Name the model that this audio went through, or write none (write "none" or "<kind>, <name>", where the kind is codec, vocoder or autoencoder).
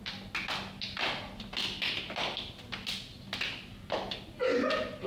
none